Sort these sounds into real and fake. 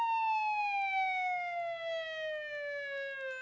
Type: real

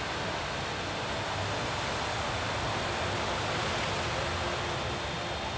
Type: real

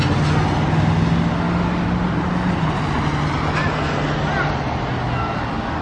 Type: real